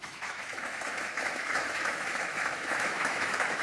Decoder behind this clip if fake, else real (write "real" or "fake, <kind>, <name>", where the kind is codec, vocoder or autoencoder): fake, autoencoder, DAC-VAE